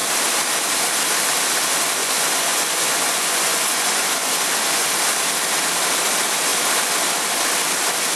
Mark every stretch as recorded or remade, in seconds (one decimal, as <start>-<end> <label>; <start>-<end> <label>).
0.0-2.0 recorded; 2.0-4.9 remade; 4.9-8.2 recorded